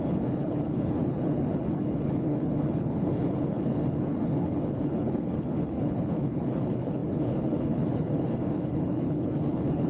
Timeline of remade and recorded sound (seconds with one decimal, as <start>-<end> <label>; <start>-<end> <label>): 0.0-9.9 remade